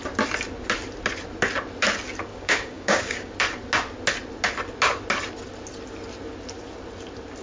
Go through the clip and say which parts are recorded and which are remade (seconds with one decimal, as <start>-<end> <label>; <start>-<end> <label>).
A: 0.0-2.3 recorded; 2.3-3.3 remade; 3.3-7.4 recorded